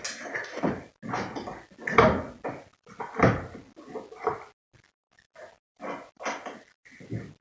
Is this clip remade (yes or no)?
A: no